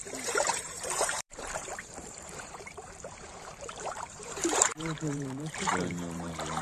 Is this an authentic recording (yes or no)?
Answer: no